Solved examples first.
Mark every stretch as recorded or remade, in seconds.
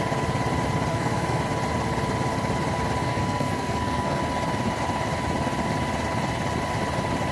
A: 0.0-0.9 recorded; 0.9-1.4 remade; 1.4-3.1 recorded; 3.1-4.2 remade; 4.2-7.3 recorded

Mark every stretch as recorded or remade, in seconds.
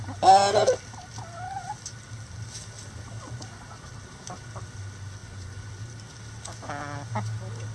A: 0.0-5.2 recorded; 5.2-5.7 remade; 5.7-7.7 recorded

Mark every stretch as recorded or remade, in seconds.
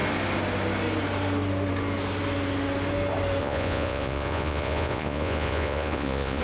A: 0.0-3.4 recorded; 3.4-6.4 remade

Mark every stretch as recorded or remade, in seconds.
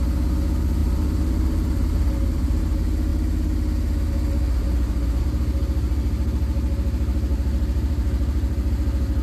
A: 0.0-0.8 recorded; 0.8-2.6 remade; 2.6-7.3 recorded; 7.3-8.7 remade; 8.7-9.2 recorded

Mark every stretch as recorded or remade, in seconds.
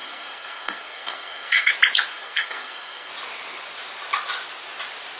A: 0.0-1.7 remade; 1.7-2.1 recorded; 2.1-3.1 remade; 3.1-5.2 recorded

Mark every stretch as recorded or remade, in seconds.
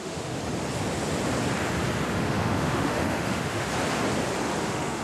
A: 0.0-0.4 remade; 0.4-2.1 recorded; 2.1-3.7 remade; 3.7-4.6 recorded; 4.6-5.0 remade